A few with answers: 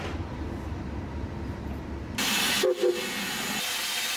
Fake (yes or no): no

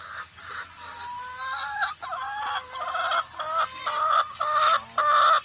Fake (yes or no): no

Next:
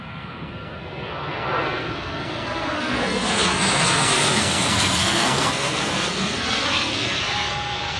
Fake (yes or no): yes